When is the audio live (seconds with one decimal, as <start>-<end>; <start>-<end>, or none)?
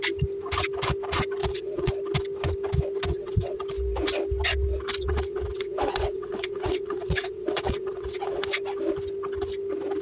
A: 0.0-1.4; 1.9-3.1; 3.6-5.0; 8.4-10.0